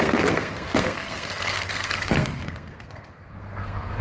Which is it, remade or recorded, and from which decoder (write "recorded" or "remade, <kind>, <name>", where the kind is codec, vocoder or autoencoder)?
remade, codec, SNAC